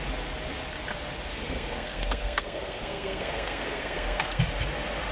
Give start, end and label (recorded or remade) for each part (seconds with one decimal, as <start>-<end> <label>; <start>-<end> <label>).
0.0-1.3 recorded; 1.3-4.4 remade; 4.4-5.1 recorded

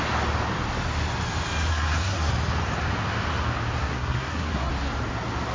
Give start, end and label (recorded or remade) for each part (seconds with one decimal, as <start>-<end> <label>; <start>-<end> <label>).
0.0-1.7 recorded; 1.7-2.3 remade; 2.3-3.8 recorded; 3.8-4.7 remade; 4.7-5.5 recorded

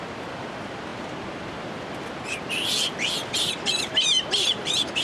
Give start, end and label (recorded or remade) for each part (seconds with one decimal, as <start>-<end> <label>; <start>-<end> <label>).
0.0-5.0 remade

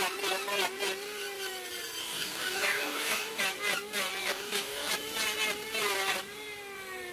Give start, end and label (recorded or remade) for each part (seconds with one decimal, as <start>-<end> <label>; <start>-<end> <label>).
0.0-2.0 recorded; 2.0-3.4 remade; 3.4-4.2 recorded; 4.2-4.9 remade; 4.9-7.1 recorded

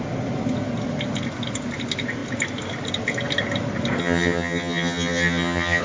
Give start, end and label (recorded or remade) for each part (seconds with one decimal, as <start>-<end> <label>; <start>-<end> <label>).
0.0-4.0 recorded; 4.0-5.8 remade

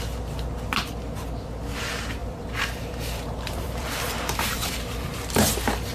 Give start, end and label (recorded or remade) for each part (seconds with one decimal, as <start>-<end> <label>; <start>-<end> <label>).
0.0-2.2 recorded; 2.2-5.9 remade

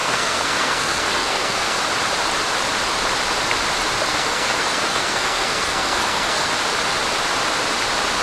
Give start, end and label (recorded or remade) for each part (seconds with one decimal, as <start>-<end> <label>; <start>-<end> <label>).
0.0-1.8 remade; 1.8-4.1 recorded; 4.1-6.5 remade; 6.5-8.2 recorded

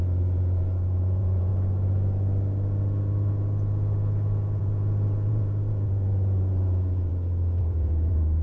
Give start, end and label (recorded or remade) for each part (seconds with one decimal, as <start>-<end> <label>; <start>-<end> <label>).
0.0-1.5 remade; 1.5-4.6 recorded; 4.6-7.1 remade; 7.1-7.6 recorded; 7.6-8.4 remade